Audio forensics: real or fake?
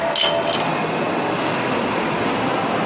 real